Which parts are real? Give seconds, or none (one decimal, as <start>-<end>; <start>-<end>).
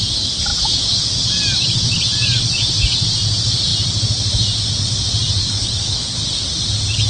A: 0.0-5.4; 6.2-7.1